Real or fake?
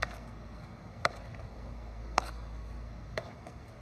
fake